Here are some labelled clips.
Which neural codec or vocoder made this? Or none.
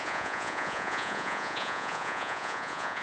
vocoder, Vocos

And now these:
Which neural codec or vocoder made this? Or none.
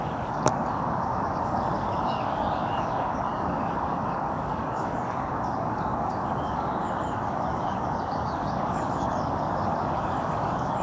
codec, DAC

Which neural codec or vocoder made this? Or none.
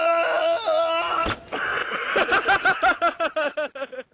none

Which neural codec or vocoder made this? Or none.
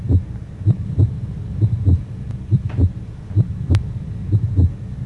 none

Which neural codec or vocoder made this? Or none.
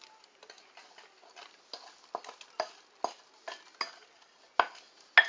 none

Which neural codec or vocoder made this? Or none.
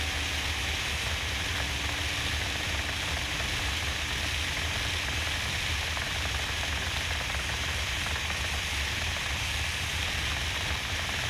none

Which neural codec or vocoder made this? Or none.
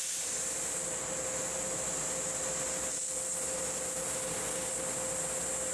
none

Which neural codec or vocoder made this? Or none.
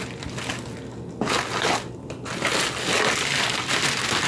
none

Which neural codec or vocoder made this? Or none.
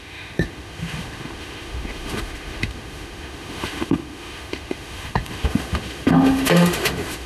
autoencoder, DAC-VAE